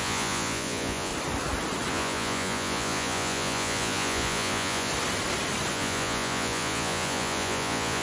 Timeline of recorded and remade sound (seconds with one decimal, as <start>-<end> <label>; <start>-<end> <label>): 0.0-1.1 remade; 1.1-1.9 recorded; 1.9-4.9 remade; 4.9-5.7 recorded; 5.7-8.0 remade